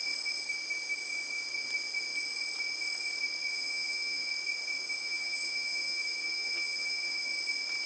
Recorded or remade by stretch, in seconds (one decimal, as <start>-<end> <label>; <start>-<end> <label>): 0.0-3.5 recorded; 3.5-4.3 remade; 4.3-5.0 recorded; 5.0-7.3 remade; 7.3-7.9 recorded